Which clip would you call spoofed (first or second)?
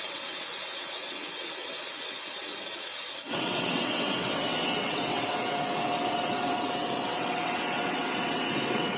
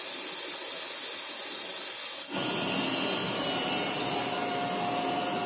first